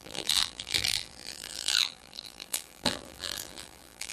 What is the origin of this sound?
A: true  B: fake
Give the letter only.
B